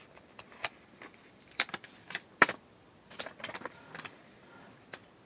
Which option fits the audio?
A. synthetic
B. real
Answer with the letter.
A